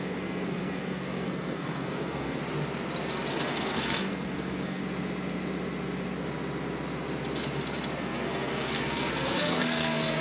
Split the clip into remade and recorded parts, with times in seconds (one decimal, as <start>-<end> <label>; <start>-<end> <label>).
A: 0.0-2.4 remade; 2.4-3.3 recorded; 3.3-4.8 remade; 4.8-8.0 recorded; 8.0-10.2 remade